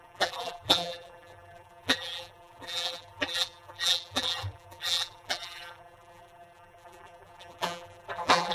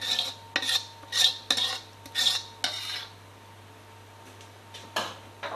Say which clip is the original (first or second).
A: second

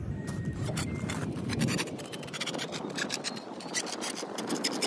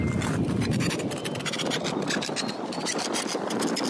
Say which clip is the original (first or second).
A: second